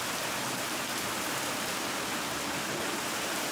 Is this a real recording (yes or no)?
no